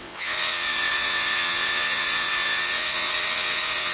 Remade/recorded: remade